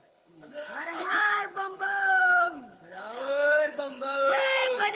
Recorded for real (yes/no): no